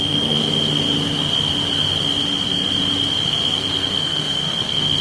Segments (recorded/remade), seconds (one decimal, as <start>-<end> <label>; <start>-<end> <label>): 0.0-0.4 remade; 0.4-3.3 recorded; 3.3-5.0 remade